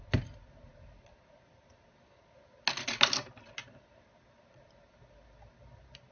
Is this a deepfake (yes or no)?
no